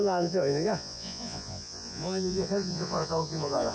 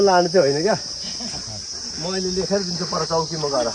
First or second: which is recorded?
second